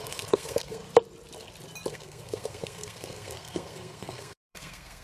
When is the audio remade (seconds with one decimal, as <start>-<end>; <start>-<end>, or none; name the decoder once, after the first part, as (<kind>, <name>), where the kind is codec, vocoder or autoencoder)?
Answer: 0.0-0.8 (codec, SNAC); 1.9-5.0